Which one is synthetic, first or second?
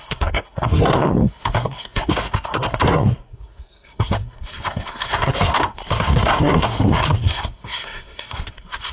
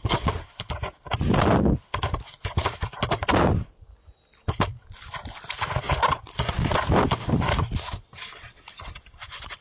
first